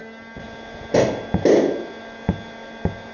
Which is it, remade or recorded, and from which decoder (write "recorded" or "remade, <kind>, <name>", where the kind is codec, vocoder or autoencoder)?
recorded